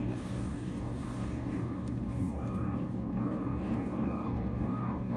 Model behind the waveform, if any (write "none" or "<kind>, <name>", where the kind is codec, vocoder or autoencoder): codec, DAC